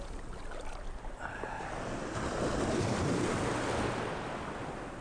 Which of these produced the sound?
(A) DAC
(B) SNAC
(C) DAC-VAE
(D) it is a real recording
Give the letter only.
D